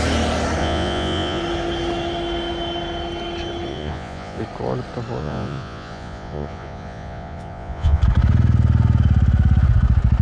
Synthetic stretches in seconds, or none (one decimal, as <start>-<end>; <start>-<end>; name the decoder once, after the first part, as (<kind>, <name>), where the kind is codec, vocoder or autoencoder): 0.6-1.4 (vocoder, Vocos); 3.7-4.4; 5.2-8.0